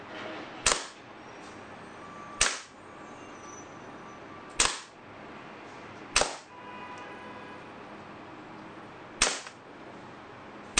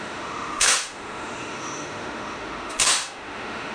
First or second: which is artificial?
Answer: second